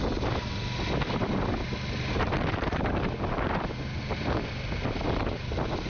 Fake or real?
real